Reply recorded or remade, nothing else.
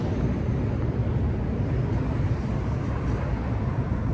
recorded